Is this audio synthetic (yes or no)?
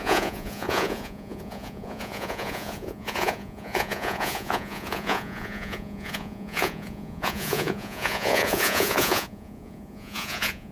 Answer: yes